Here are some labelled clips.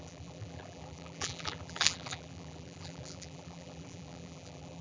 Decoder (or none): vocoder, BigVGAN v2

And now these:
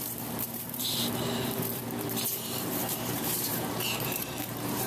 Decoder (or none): vocoder, BigVGAN v2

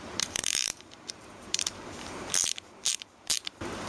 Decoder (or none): vocoder, BigVGAN v2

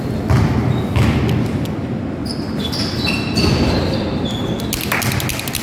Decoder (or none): none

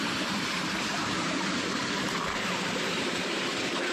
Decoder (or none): vocoder, BigVGAN v2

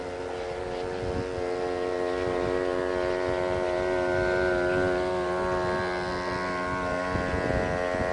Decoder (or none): none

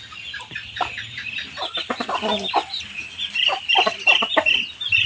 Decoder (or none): vocoder, BigVGAN v2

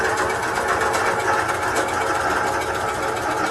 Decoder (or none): none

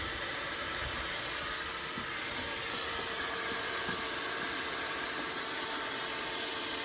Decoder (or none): vocoder, BigVGAN v2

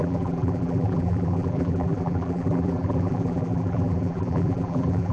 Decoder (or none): vocoder, BigVGAN v2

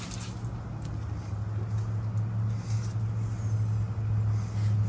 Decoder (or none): none